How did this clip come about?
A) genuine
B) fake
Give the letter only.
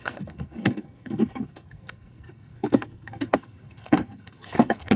B